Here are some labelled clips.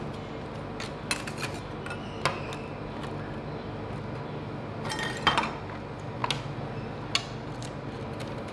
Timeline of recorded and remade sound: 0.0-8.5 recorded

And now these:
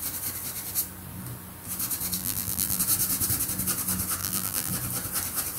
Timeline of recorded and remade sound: 0.0-2.2 recorded; 2.2-2.8 remade; 2.8-4.2 recorded; 4.2-4.7 remade; 4.7-5.6 recorded